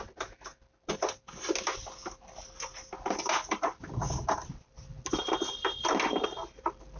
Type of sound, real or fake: real